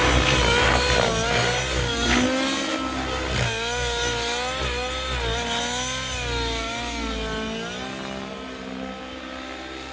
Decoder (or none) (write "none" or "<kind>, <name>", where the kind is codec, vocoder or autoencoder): none